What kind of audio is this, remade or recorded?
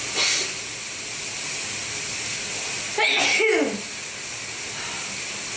recorded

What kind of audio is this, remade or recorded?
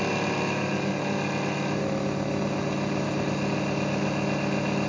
recorded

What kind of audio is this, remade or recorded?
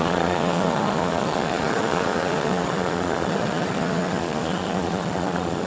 remade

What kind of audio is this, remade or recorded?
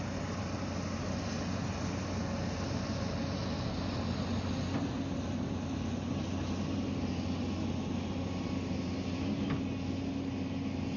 recorded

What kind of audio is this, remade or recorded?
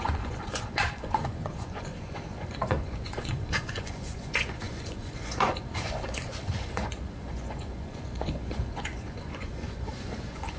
remade